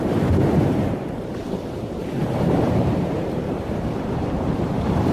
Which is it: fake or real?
fake